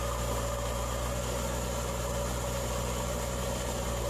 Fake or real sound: real